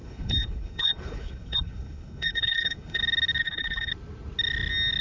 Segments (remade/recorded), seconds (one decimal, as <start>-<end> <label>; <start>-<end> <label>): 0.0-3.0 remade; 3.0-3.4 recorded; 3.4-3.9 remade; 3.9-5.0 recorded